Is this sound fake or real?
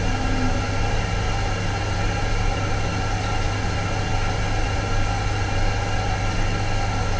real